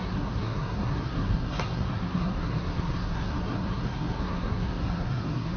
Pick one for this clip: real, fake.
fake